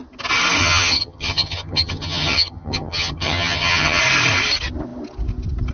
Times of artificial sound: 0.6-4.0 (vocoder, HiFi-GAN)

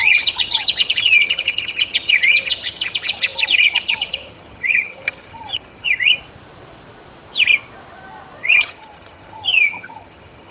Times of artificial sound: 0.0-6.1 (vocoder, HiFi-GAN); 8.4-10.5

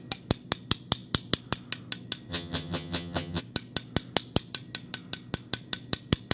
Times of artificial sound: 2.3-3.4 (vocoder, HiFi-GAN)